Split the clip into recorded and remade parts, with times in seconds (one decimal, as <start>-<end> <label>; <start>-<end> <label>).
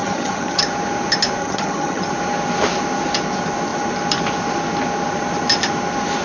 0.0-0.6 remade; 0.6-1.4 recorded; 1.4-2.1 remade; 2.1-6.2 recorded